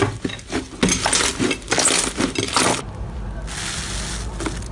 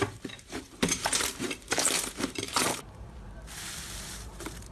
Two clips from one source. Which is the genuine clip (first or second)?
first